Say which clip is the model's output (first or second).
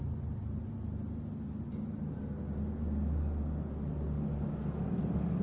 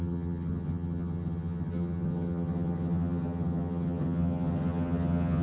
second